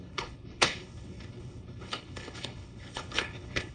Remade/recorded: remade